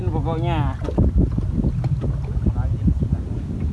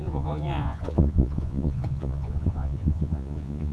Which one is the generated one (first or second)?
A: second